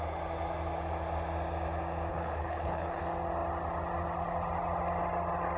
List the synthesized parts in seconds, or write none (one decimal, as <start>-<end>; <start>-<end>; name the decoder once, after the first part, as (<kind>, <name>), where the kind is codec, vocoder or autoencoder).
2.1-3.0 (codec, HILCodec)